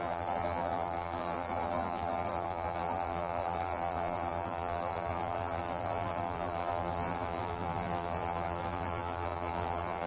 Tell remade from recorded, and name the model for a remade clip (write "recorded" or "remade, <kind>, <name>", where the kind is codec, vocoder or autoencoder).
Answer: remade, vocoder, BigVGAN v2